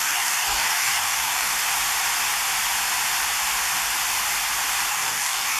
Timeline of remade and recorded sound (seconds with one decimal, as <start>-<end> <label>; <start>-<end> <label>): 0.0-1.5 remade; 1.5-4.9 recorded; 4.9-5.6 remade